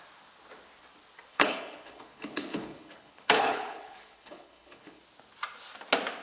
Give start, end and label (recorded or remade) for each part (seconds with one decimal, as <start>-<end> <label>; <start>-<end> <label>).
0.0-1.3 recorded; 1.3-5.0 remade; 5.0-6.2 recorded